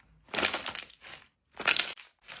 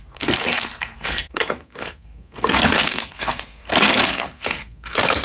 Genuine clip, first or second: first